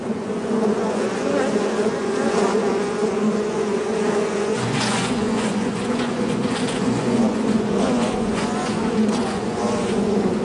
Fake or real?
fake